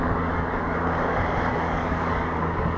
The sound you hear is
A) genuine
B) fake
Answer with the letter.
B